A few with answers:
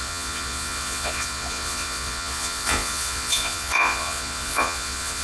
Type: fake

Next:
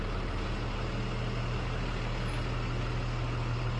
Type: real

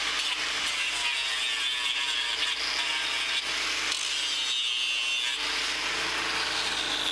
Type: real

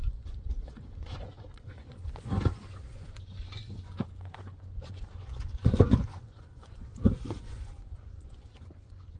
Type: fake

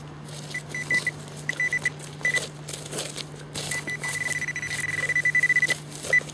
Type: real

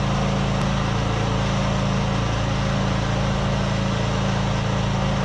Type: real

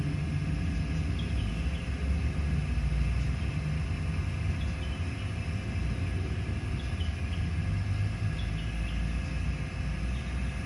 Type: real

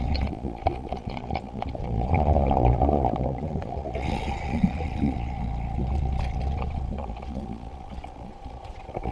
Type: fake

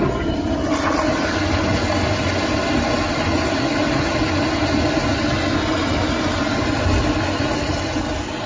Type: real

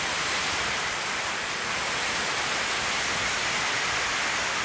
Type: real